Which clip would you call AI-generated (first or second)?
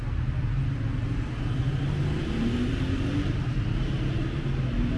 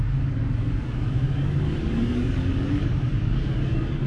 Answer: second